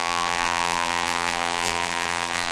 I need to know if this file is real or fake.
fake